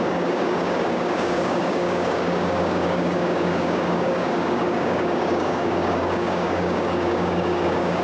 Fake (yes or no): yes